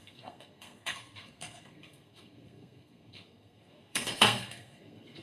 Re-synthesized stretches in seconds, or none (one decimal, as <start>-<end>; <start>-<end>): 0.0-5.2